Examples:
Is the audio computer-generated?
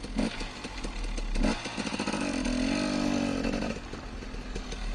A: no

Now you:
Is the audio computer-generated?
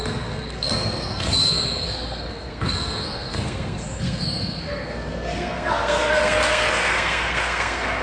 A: yes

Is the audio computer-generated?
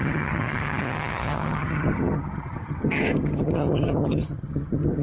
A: yes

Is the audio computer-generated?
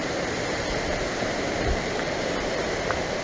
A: yes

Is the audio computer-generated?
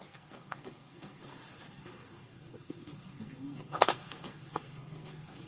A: yes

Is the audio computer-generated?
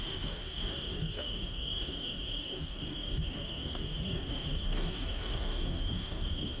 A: yes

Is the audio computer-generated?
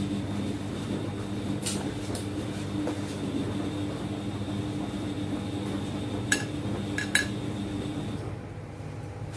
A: no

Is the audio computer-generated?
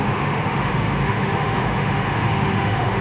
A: yes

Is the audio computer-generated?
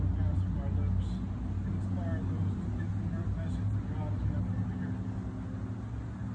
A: no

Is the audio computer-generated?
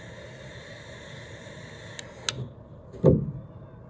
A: no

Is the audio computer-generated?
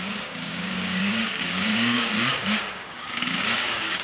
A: yes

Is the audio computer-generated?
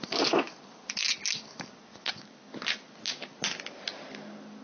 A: no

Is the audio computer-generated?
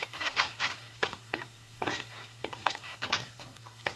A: yes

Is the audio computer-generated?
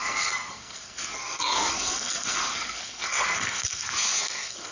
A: yes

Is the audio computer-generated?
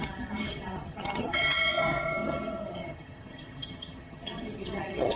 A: yes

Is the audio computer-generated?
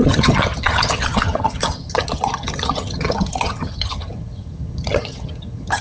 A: yes